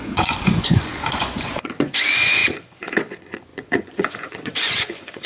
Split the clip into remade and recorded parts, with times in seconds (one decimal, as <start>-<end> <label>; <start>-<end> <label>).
0.0-5.3 remade